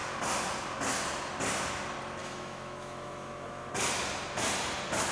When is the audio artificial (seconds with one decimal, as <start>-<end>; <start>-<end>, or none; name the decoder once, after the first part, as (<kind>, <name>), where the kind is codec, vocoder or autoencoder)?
2.2-3.7 (autoencoder, DAC-VAE)